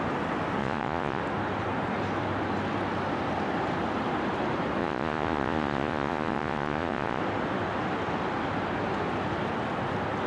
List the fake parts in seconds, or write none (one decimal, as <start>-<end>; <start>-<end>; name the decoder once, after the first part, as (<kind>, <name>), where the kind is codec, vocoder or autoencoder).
0.6-1.2 (vocoder, Vocos); 4.8-7.2